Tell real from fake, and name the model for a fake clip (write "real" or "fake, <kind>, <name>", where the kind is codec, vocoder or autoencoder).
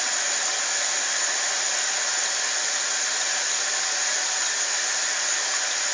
real